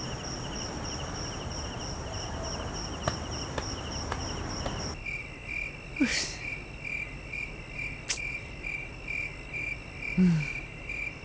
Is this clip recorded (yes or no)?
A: yes